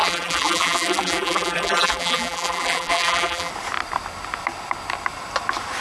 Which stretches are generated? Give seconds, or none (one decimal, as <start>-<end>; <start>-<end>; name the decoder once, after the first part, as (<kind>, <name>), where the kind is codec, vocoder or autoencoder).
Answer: 0.0-3.5 (vocoder, BigVGAN v2)